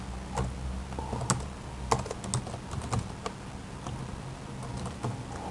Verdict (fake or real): real